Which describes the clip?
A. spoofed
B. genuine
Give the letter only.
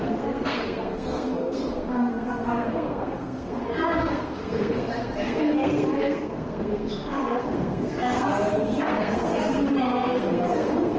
A